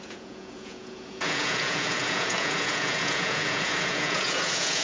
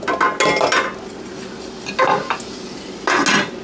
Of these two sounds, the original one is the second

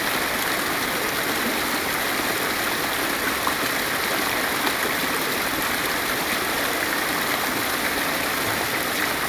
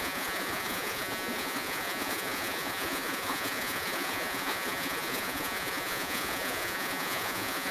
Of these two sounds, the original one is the first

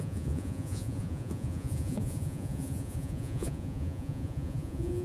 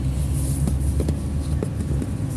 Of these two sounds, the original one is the second